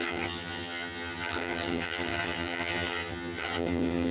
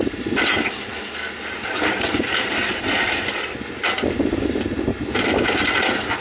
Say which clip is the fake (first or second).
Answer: first